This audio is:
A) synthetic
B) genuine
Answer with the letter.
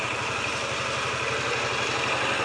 B